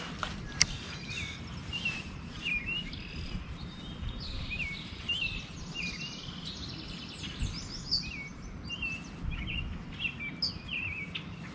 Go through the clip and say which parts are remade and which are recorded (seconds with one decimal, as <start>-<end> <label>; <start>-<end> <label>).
0.0-1.6 recorded; 1.6-5.4 remade; 5.4-8.3 recorded; 8.3-8.9 remade; 8.9-11.5 recorded